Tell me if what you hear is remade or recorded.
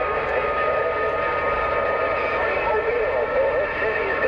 recorded